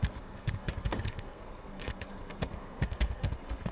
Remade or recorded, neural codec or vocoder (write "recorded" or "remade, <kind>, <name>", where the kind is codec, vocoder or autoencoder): remade, codec, SNAC